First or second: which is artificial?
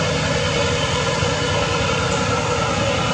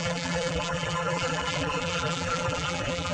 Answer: second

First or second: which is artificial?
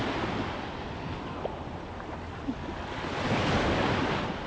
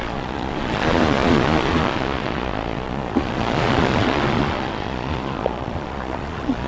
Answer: second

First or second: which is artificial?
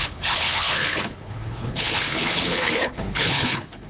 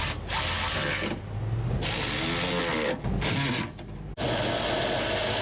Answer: first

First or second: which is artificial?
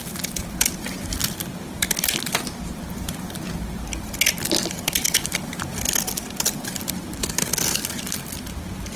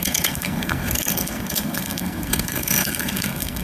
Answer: second